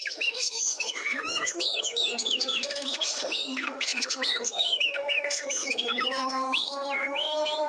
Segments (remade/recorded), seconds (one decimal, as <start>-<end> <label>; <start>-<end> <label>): 0.0-7.7 remade